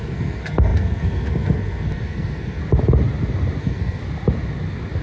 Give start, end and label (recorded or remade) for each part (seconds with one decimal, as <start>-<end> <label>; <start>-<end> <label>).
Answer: 0.0-2.6 remade; 2.6-3.6 recorded; 3.6-4.0 remade; 4.0-5.0 recorded